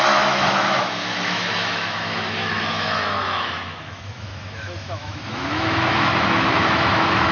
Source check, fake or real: fake